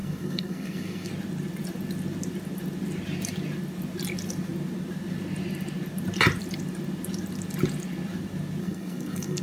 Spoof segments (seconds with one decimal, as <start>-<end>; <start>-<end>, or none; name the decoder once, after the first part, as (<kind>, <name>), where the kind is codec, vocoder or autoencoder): 0.0-1.1 (codec, SNAC); 8.6-9.4